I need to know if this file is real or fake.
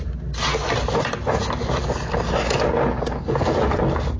real